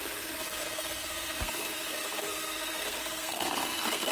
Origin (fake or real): fake